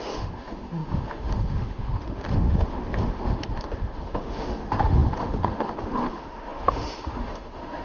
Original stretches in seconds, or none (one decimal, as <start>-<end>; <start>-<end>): none